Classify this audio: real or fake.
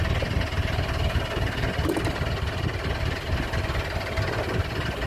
real